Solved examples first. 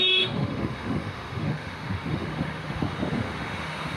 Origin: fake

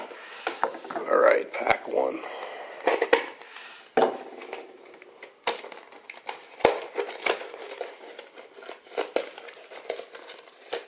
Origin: real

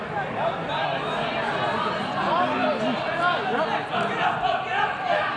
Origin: real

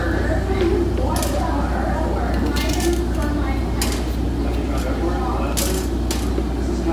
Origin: real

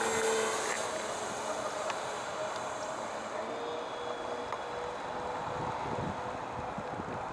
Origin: real